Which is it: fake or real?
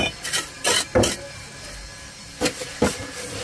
fake